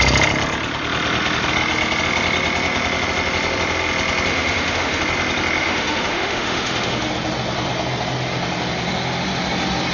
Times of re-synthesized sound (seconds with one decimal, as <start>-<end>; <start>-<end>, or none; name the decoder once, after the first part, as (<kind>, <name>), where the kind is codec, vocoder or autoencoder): 4.3-5.0 (autoencoder, DAC-VAE); 5.6-7.1